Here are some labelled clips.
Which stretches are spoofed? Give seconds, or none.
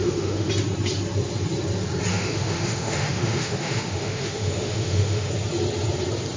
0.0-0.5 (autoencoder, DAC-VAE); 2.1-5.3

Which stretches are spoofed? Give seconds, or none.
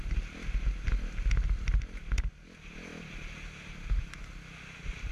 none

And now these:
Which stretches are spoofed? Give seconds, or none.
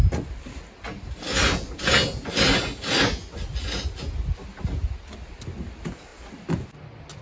none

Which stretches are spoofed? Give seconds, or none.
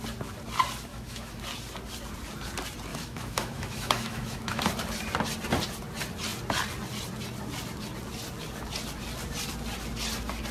0.9-1.4 (autoencoder, DAC-VAE); 2.9-4.6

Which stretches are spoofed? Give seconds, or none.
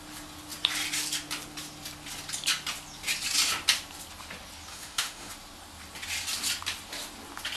4.7-5.3 (autoencoder, DAC-VAE)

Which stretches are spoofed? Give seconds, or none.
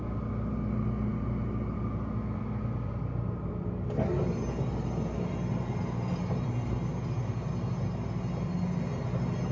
none